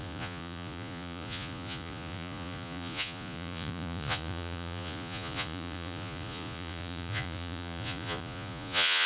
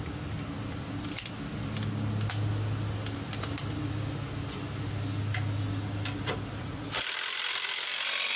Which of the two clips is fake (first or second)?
first